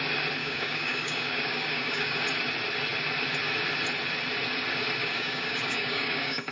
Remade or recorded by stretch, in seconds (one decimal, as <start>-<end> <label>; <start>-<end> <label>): 0.0-0.4 recorded; 0.4-2.2 remade; 2.2-5.0 recorded; 5.0-6.5 remade